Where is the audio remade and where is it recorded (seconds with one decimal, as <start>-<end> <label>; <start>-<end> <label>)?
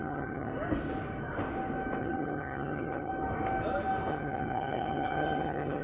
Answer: 0.0-0.5 remade; 0.5-2.0 recorded; 2.0-3.1 remade; 3.1-4.1 recorded; 4.1-5.8 remade